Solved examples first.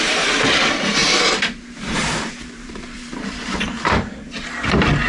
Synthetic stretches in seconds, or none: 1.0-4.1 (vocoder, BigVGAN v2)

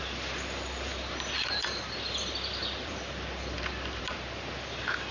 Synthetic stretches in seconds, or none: 0.9-4.0 (vocoder, BigVGAN v2)

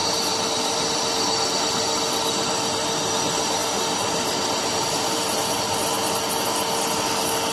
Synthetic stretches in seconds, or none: 0.0-1.4 (vocoder, BigVGAN v2); 3.6-5.7

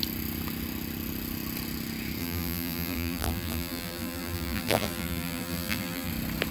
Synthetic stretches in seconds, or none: 2.2-6.1 (vocoder, BigVGAN v2)

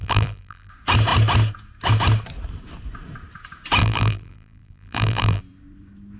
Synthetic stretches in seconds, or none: 0.0-0.7 (vocoder, BigVGAN v2); 3.8-5.4

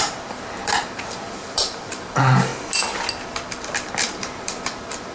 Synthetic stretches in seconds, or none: 0.0-2.5 (vocoder, BigVGAN v2); 4.0-5.1

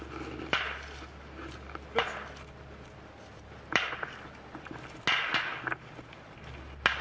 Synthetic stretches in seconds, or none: none

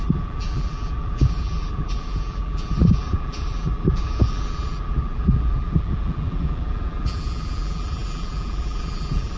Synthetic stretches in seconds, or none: 0.0-9.4 (vocoder, BigVGAN v2)